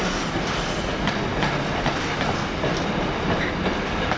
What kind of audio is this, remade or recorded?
recorded